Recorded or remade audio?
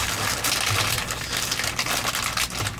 recorded